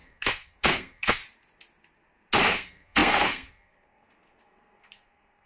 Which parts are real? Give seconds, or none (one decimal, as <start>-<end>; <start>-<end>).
1.2-2.4